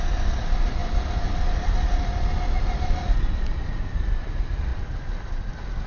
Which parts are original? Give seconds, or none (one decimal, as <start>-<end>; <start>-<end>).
0.0-5.9